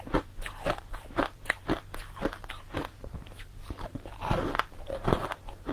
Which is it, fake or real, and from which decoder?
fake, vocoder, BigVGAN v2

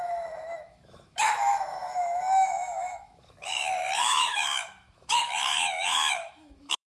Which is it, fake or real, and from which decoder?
fake, autoencoder, DAC-VAE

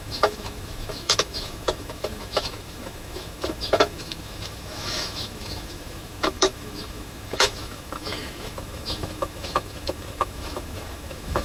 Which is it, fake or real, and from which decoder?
fake, autoencoder, DAC-VAE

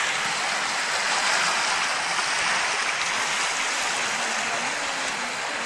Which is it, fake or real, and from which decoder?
real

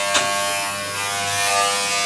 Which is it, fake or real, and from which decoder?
real